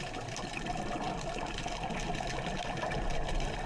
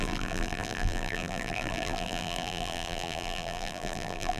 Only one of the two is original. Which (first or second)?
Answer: first